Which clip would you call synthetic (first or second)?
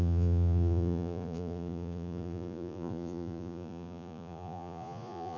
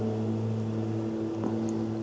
first